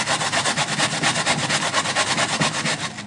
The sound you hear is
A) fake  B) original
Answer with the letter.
B